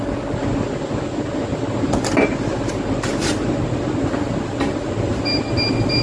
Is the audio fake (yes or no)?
no